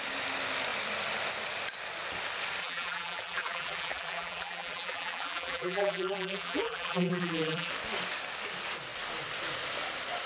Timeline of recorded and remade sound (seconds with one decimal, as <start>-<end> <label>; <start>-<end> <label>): 0.0-2.6 recorded; 2.6-7.7 remade; 7.7-10.3 recorded